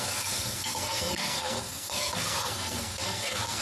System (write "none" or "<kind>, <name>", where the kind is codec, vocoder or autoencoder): codec, SNAC